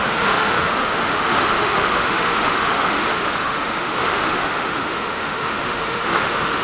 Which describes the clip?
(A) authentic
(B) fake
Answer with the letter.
B